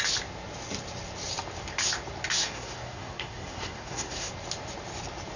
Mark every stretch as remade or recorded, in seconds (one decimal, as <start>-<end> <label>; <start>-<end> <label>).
0.0-2.4 recorded; 2.4-4.3 remade; 4.3-5.4 recorded